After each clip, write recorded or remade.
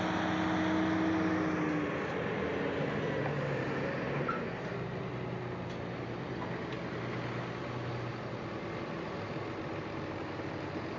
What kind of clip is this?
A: recorded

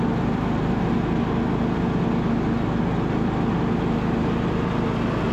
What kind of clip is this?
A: recorded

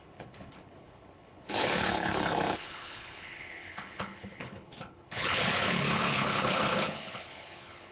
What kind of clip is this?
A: remade